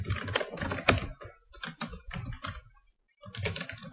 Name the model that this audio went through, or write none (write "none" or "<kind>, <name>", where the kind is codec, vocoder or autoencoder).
none